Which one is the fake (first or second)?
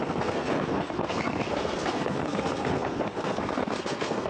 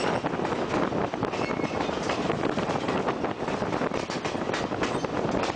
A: first